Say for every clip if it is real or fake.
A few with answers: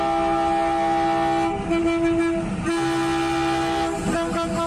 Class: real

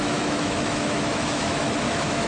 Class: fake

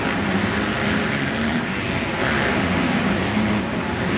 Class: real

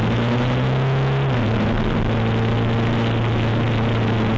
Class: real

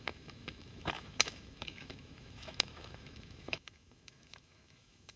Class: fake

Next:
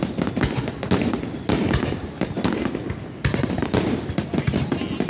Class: real